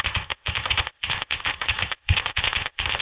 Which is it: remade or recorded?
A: remade